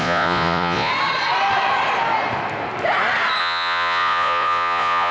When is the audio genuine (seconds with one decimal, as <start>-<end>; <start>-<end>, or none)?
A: 0.9-3.4